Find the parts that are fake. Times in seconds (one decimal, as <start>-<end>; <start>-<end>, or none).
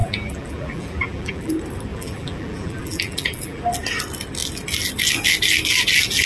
0.0-1.5; 1.9-3.6